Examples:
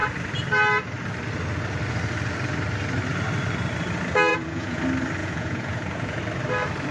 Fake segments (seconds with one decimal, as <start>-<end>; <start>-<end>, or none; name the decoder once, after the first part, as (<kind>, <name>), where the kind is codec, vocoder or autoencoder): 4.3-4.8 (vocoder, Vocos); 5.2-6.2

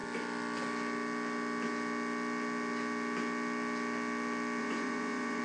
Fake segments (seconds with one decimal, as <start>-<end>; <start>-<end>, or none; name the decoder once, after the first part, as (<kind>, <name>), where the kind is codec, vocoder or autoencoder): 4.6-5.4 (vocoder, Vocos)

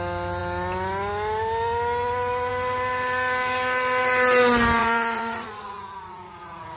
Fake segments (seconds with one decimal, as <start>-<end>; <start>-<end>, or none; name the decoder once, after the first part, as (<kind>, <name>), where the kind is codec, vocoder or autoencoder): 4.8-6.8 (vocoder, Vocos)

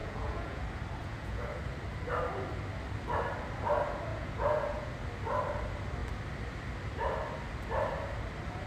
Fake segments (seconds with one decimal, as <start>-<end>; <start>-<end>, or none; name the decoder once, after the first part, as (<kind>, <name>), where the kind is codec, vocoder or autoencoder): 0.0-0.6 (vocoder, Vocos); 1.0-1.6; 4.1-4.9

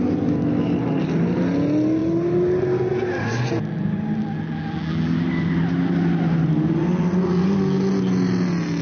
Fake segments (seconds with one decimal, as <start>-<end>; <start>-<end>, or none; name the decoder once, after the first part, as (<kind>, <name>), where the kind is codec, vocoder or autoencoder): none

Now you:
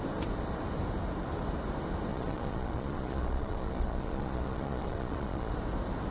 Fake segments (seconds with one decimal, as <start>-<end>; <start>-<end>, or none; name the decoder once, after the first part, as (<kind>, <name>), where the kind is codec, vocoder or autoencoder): 2.1-5.5 (vocoder, Vocos)